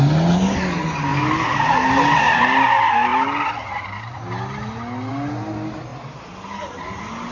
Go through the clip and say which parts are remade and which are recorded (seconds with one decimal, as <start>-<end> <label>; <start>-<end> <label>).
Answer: 0.0-7.3 recorded